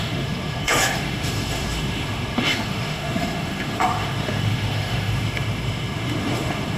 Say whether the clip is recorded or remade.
remade